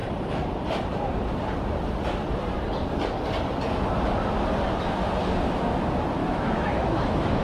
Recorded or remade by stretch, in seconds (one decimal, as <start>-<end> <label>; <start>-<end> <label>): 0.0-6.2 recorded; 6.2-7.4 remade